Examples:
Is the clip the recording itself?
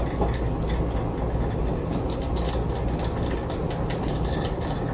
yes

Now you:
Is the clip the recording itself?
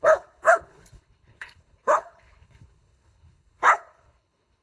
no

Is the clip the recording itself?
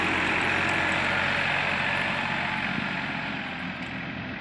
yes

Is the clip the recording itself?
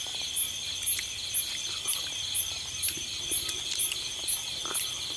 yes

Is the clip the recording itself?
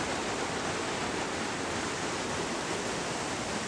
yes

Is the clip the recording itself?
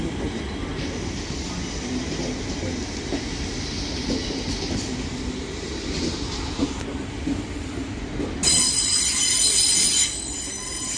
yes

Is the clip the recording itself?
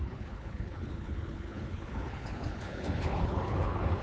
no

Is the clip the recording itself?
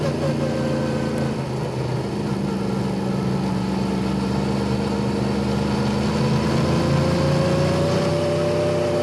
yes